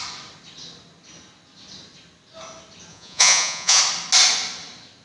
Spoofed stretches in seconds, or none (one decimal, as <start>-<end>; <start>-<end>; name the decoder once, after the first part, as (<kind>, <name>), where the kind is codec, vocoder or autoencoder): 2.9-3.8 (vocoder, Vocos)